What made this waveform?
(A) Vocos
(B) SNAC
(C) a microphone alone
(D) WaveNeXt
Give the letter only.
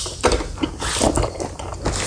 C